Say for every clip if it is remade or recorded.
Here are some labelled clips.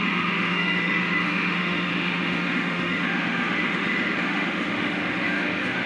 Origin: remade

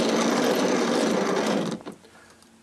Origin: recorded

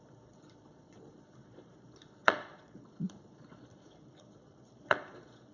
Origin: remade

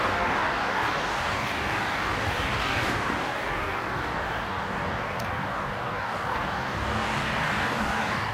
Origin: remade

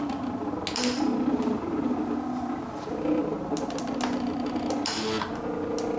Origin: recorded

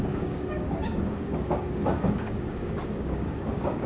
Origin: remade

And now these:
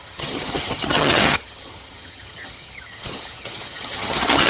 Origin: remade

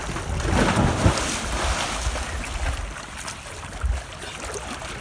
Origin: recorded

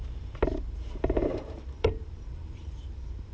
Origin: remade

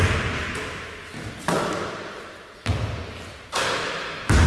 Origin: recorded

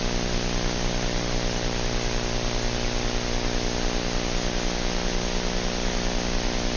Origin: recorded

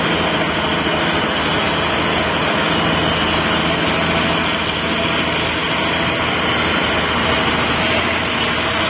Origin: recorded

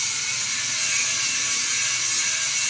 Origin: recorded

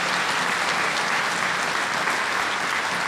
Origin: recorded